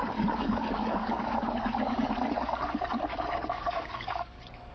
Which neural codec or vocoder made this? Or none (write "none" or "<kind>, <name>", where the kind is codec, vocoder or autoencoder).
codec, DAC